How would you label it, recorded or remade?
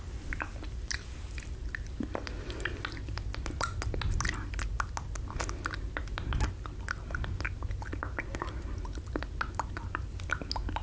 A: recorded